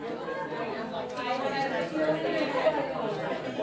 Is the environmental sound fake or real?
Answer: real